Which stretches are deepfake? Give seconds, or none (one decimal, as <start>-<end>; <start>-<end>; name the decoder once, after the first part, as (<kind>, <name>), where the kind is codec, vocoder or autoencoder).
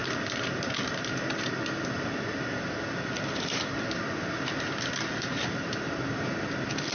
none